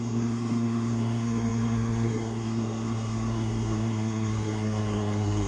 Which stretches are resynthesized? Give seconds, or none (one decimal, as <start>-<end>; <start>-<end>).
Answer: 0.0-5.5